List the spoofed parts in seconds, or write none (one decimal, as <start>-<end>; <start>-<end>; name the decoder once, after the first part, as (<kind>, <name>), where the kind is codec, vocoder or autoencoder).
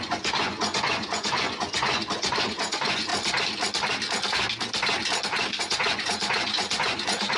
0.0-3.1 (vocoder, Vocos); 5.6-7.4